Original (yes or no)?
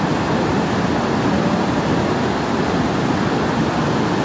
yes